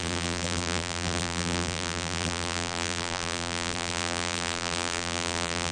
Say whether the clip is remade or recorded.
remade